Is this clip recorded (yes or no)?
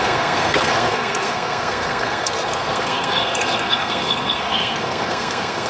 no